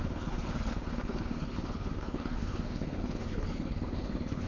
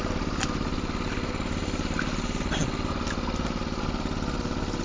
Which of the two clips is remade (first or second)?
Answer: first